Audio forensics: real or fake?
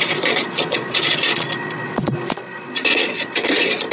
fake